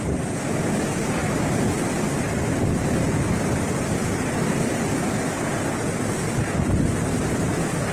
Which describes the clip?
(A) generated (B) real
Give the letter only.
B